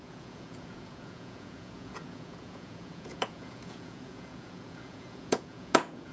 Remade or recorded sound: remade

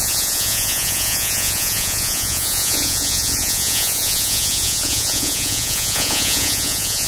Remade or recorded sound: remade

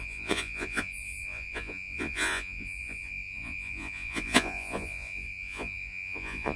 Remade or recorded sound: remade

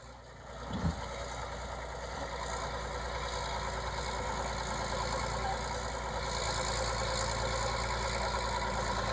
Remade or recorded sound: recorded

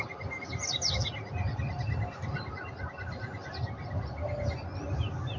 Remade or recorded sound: recorded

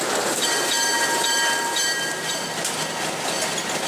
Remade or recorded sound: recorded